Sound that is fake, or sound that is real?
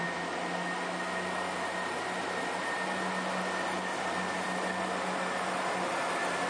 real